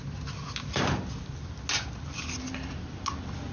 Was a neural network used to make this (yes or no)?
no